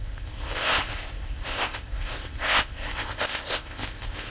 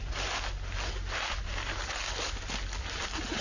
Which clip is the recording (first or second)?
second